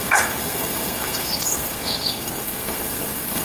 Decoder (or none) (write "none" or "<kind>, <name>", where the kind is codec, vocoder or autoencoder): codec, SNAC